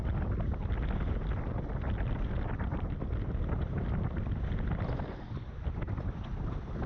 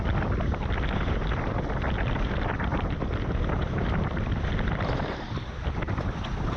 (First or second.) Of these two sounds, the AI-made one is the second